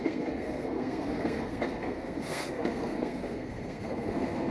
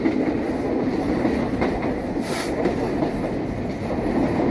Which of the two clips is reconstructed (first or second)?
first